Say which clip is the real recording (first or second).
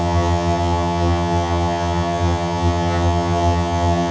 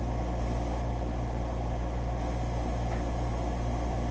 second